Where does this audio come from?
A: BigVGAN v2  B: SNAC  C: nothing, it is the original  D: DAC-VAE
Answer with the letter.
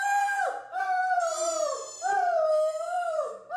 A